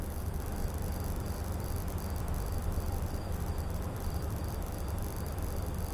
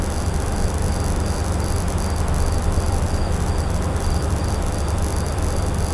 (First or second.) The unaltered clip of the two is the second